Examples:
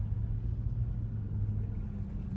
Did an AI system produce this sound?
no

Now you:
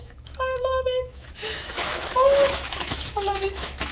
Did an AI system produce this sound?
yes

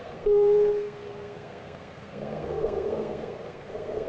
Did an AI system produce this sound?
yes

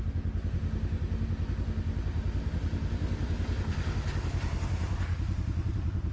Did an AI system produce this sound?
no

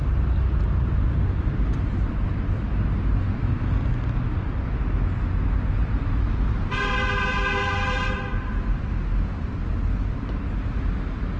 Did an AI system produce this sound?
no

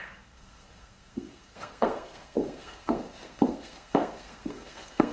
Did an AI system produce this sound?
yes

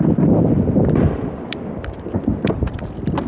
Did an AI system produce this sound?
no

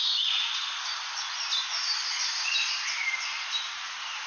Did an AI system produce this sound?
no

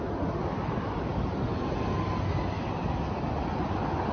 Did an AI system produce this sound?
no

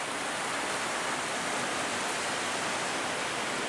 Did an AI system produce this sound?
no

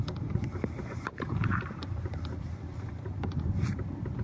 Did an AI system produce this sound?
yes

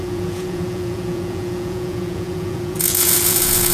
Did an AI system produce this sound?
yes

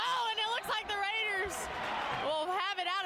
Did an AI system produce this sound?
no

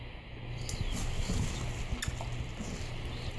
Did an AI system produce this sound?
no